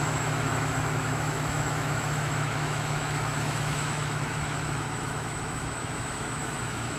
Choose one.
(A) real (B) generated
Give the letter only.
B